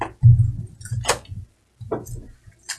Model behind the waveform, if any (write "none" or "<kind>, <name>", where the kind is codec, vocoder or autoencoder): none